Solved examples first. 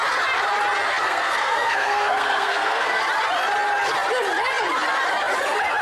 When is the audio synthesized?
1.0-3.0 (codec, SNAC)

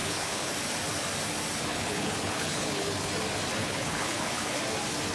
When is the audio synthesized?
0.0-0.5 (codec, HILCodec); 1.7-3.1; 3.6-4.6

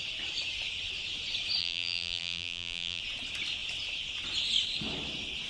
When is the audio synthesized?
1.6-3.0 (vocoder, BigVGAN v2)

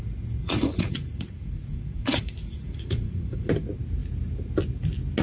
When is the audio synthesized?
0.4-3.5 (vocoder, Vocos)